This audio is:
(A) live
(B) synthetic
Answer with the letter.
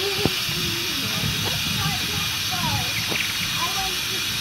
A